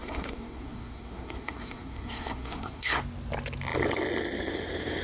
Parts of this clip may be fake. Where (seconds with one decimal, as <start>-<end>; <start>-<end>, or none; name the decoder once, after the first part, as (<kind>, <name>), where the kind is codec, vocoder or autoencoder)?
0.0-3.0 (codec, SNAC)